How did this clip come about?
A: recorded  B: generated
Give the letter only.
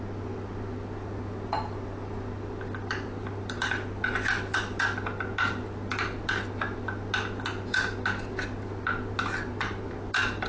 A